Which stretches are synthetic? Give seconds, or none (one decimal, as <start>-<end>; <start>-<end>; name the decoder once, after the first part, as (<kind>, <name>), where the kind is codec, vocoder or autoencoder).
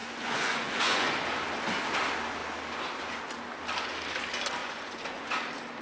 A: 0.0-1.1 (vocoder, Vocos); 4.6-5.3